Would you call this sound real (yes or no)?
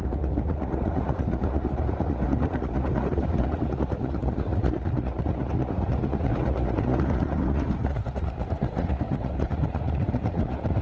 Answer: no